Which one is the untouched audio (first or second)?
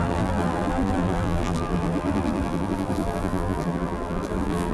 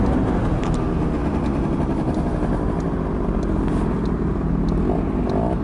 second